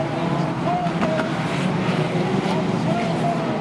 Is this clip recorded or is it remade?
remade